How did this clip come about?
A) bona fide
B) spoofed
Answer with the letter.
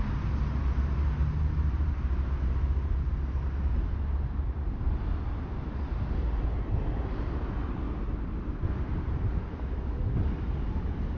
A